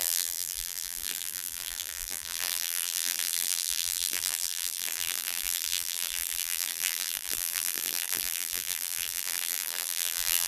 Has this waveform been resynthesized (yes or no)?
yes